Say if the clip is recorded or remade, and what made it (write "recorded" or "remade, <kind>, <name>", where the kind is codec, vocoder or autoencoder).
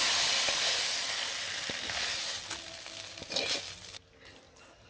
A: recorded